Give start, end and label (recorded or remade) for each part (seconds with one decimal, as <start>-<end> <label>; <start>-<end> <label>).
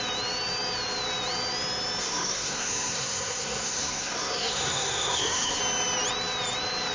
0.0-2.0 recorded; 2.0-5.6 remade; 5.6-6.9 recorded